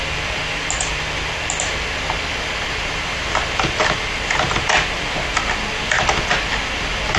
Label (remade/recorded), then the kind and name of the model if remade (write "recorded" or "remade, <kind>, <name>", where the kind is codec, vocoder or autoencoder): recorded